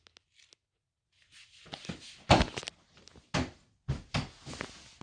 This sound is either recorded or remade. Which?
recorded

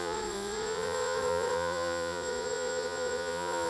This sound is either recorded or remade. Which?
remade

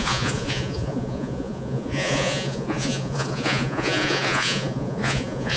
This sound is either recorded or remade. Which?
remade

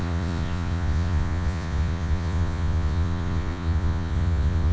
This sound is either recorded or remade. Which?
remade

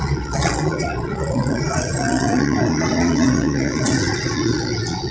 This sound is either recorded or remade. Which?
remade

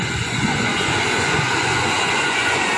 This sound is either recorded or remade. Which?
remade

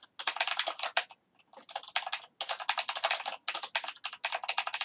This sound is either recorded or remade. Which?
recorded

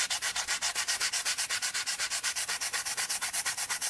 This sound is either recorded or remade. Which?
remade